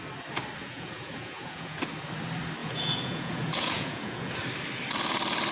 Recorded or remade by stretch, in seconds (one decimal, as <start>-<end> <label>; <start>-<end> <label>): 0.0-0.6 recorded; 0.6-1.8 remade; 1.8-2.6 recorded; 2.6-4.3 remade; 4.3-5.5 recorded